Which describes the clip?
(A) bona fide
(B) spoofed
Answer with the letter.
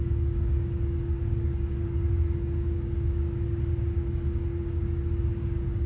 B